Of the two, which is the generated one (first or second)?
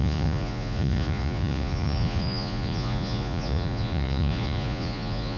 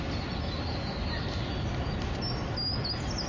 first